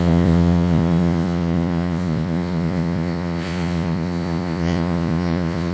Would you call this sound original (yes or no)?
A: no